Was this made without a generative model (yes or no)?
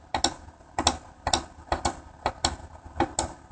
yes